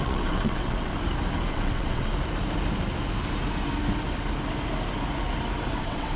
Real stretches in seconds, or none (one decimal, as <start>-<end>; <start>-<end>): 0.9-1.5; 2.1-5.8